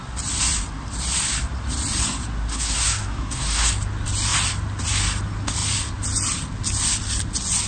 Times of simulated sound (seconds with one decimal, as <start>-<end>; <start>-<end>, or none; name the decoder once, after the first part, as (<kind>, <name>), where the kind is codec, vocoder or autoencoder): 2.5-3.7 (codec, SNAC)